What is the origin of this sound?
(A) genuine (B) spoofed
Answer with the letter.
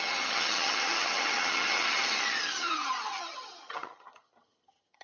B